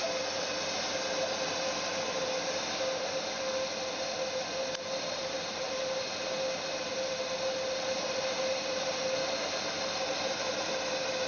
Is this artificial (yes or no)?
no